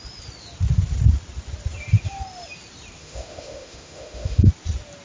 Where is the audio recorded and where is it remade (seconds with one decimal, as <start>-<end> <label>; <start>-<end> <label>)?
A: 0.0-3.0 recorded; 3.0-4.5 remade; 4.5-5.0 recorded